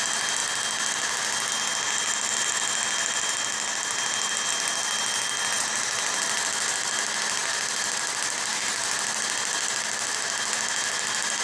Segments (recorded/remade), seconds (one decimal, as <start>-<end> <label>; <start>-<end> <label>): 0.0-11.4 recorded